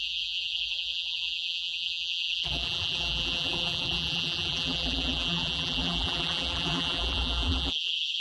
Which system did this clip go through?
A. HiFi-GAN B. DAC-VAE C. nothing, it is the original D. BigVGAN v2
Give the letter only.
D